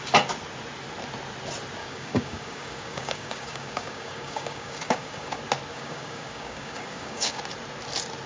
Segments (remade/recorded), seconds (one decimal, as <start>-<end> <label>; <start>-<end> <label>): 0.0-1.8 recorded; 1.8-5.3 remade; 5.3-5.7 recorded; 5.7-7.4 remade; 7.4-8.3 recorded